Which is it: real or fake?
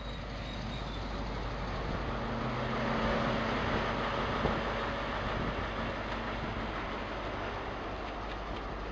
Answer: real